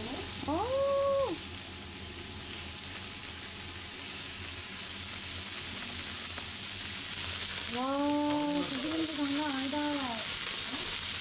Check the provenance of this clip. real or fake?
real